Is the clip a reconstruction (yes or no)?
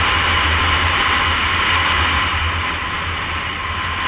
no